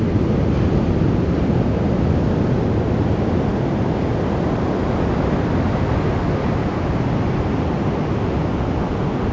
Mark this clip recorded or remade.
recorded